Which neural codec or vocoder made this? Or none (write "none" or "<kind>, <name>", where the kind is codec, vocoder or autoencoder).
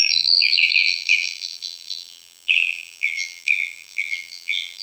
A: vocoder, BigVGAN v2